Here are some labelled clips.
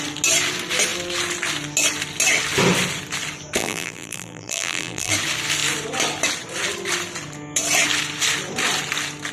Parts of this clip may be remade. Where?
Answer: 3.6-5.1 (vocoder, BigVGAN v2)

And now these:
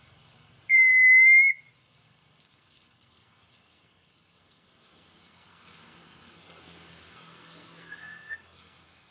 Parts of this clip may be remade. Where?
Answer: 0.0-0.9 (codec, SNAC); 1.8-9.1

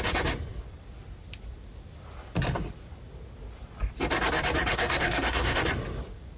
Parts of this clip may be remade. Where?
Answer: 4.7-5.6 (codec, SNAC)

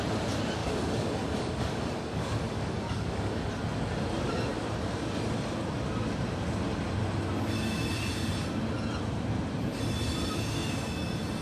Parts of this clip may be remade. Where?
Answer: 0.6-3.5 (codec, DAC)

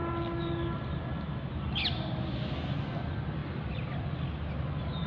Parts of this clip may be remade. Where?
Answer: 3.0-5.1 (vocoder, BigVGAN v2)

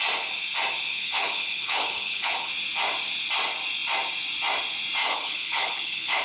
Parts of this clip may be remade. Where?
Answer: 0.9-2.5 (codec, HILCodec); 5.0-6.2

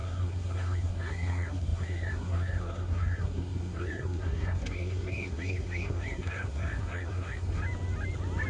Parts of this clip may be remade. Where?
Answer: 0.0-7.6 (codec, SNAC)

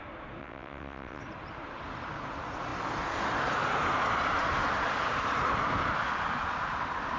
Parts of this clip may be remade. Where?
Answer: 0.4-1.2 (vocoder, WaveNeXt)